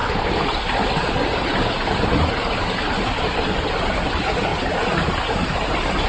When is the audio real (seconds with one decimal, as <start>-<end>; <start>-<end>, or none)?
0.0-6.1